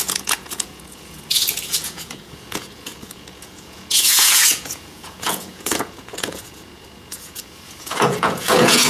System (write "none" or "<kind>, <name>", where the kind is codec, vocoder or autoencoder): vocoder, Vocos